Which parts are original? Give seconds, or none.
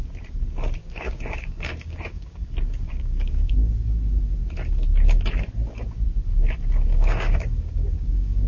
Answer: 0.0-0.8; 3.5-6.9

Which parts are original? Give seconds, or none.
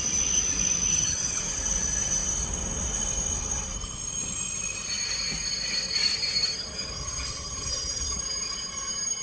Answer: 0.0-0.9; 1.4-7.0; 8.2-9.2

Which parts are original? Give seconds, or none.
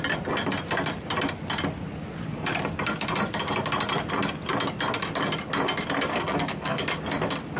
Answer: 0.0-6.1; 6.8-7.6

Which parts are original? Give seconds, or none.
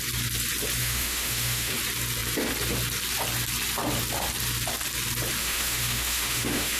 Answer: 0.0-0.8; 1.7-5.4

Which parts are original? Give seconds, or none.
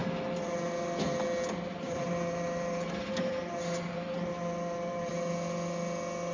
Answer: 0.0-1.7; 5.1-6.3